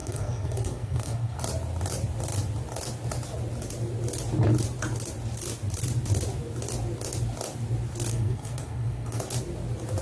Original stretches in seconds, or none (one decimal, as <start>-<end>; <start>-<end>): 1.4-8.1; 9.2-10.0